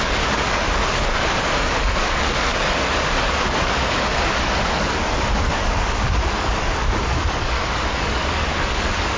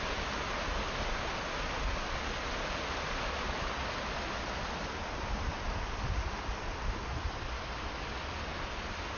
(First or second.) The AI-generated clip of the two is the first